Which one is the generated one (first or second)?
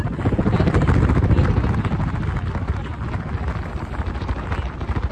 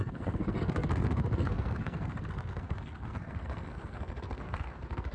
second